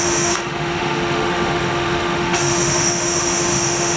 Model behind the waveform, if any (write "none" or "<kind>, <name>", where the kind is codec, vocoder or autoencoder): autoencoder, DAC-VAE